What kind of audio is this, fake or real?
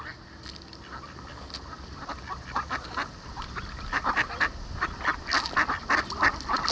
real